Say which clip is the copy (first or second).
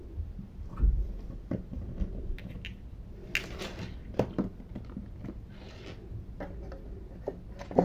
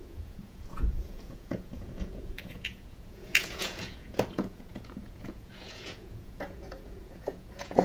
second